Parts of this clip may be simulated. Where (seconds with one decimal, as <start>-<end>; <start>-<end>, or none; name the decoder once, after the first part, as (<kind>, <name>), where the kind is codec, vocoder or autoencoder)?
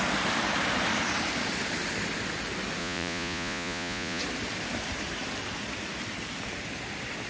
2.8-4.2 (vocoder, Vocos)